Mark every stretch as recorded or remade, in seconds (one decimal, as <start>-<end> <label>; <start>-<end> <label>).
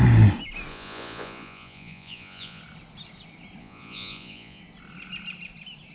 0.0-0.7 recorded; 0.7-2.6 remade; 2.6-3.6 recorded; 3.6-4.6 remade; 4.6-5.9 recorded